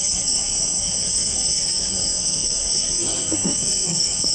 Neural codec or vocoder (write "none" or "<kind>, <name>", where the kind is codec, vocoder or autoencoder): codec, SNAC